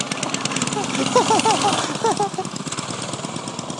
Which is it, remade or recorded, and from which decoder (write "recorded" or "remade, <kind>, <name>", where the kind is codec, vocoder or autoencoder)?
recorded